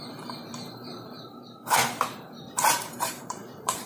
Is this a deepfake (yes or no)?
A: yes